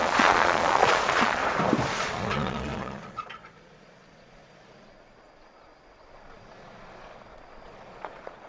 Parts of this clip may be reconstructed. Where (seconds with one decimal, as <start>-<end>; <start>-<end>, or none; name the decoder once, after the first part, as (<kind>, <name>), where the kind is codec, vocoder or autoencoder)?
0.0-1.4 (vocoder, Vocos); 2.0-8.5